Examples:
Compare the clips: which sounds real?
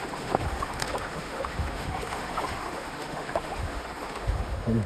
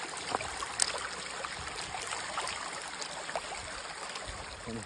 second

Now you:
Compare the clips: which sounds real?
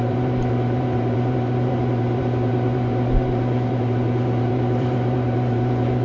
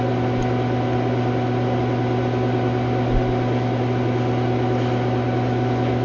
second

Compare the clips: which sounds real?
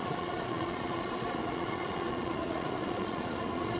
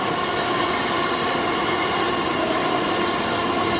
second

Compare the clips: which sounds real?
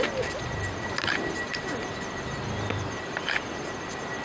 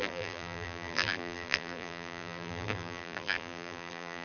first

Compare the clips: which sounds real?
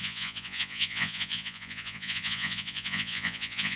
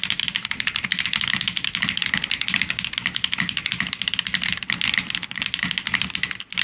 second